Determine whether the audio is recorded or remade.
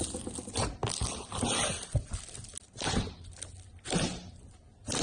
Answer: recorded